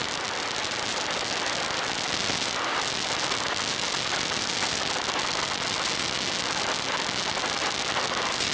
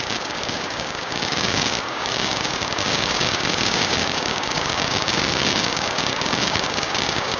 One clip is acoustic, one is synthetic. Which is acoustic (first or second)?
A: first